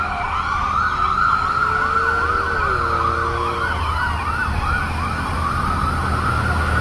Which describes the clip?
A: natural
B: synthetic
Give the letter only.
A